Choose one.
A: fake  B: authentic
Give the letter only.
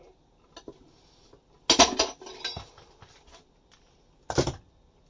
B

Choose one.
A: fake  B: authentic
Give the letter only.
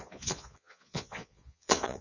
A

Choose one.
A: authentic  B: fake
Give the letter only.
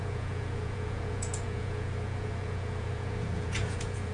B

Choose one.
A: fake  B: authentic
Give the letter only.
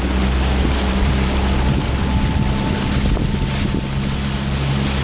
B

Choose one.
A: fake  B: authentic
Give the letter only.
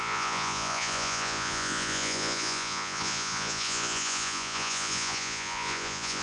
A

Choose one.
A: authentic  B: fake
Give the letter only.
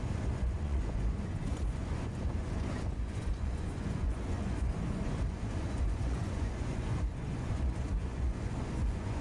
B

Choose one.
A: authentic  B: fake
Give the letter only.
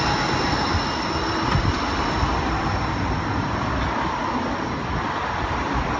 A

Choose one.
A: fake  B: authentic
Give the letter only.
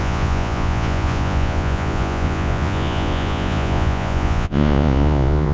A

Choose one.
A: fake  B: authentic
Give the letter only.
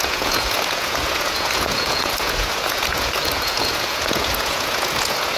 A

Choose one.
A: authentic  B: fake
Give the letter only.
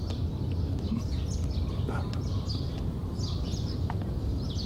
A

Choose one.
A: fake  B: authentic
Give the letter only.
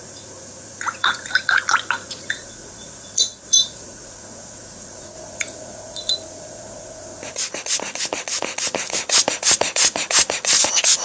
A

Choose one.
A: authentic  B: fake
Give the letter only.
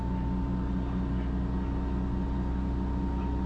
A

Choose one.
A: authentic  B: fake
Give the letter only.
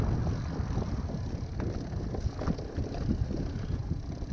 A